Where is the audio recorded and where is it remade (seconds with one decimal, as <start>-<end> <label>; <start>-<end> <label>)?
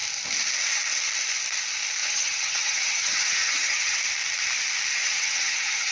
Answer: 0.0-2.0 recorded; 2.0-4.0 remade; 4.0-4.9 recorded; 4.9-5.9 remade